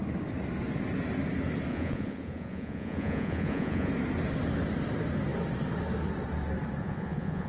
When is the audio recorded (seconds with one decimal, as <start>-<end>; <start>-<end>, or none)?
0.0-1.7; 3.9-6.8